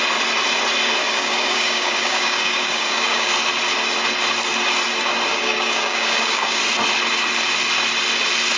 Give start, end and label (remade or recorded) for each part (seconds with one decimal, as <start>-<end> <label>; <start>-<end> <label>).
0.0-1.0 recorded; 1.0-3.3 remade; 3.3-5.3 recorded; 5.3-6.6 remade; 6.6-8.6 recorded

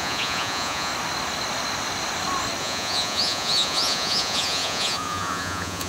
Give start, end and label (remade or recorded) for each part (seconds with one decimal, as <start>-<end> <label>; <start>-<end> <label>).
0.0-0.9 remade; 0.9-2.6 recorded; 2.6-5.9 remade

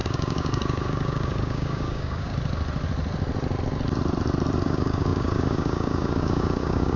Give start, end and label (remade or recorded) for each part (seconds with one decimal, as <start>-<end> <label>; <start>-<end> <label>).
0.0-2.3 remade; 2.3-4.6 recorded; 4.6-7.0 remade